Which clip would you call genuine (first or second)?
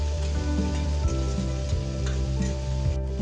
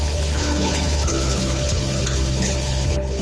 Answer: first